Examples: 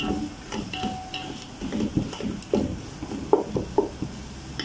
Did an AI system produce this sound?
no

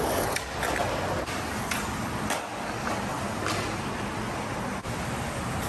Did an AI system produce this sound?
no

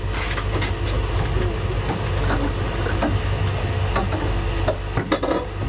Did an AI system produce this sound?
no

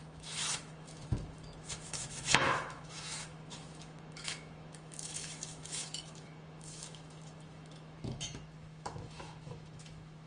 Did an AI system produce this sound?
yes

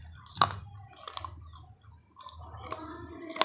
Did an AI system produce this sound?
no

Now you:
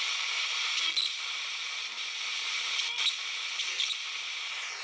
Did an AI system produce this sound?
no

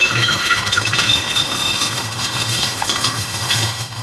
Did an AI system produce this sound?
yes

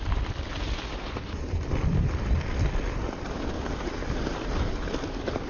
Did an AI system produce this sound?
no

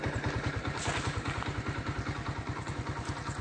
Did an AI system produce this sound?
no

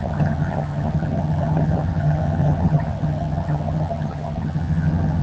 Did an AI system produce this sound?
yes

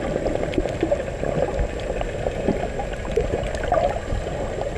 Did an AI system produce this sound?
no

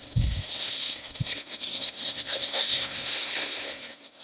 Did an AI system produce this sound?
yes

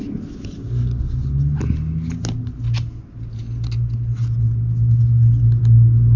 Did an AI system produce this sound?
no